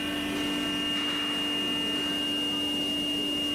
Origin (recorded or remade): recorded